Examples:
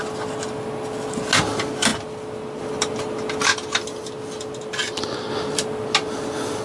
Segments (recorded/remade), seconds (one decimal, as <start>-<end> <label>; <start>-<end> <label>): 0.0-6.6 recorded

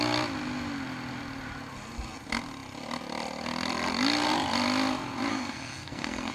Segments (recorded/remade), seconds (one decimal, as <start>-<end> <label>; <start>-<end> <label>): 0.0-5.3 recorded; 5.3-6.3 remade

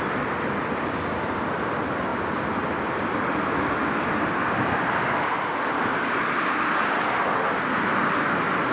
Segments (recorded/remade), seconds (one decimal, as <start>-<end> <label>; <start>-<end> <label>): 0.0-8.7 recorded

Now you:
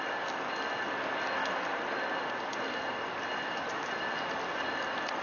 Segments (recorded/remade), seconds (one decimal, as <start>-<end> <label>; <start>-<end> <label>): 0.0-5.2 recorded

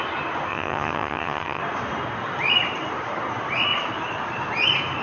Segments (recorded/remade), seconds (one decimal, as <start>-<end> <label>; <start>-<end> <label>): 0.0-0.5 recorded; 0.5-1.6 remade; 1.6-5.0 recorded

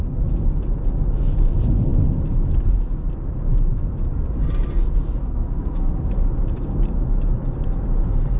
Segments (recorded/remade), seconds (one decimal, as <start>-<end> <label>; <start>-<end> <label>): 0.0-5.2 recorded; 5.2-5.9 remade; 5.9-8.4 recorded

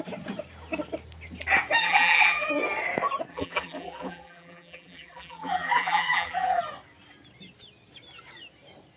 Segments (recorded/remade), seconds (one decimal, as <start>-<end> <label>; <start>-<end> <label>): 0.0-1.8 recorded; 1.8-2.5 remade; 2.5-3.3 recorded; 3.3-6.6 remade; 6.6-9.0 recorded

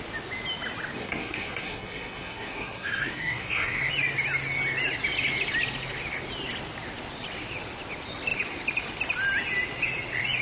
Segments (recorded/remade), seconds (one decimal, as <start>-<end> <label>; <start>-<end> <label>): 0.0-1.0 recorded; 1.0-3.9 remade; 3.9-10.4 recorded